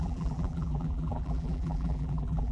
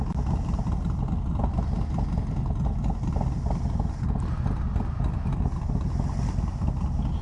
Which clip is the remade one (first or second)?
first